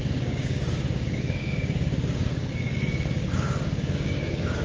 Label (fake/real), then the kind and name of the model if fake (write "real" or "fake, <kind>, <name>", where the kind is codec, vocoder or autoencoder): fake, codec, DAC